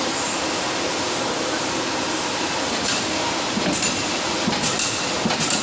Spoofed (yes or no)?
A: no